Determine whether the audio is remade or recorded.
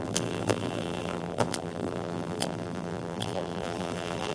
remade